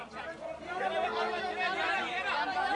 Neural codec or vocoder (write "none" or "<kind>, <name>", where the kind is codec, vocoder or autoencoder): none